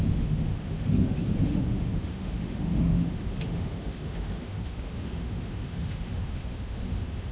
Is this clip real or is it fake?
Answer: fake